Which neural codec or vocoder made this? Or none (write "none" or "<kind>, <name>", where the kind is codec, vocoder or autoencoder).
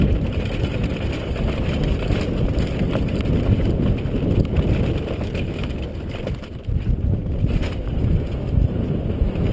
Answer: vocoder, BigVGAN v2